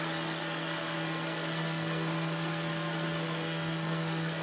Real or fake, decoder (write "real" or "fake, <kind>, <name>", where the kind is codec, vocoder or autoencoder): fake, codec, SNAC